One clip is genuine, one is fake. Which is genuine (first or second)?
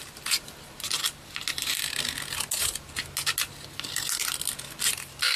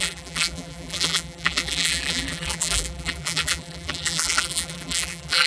first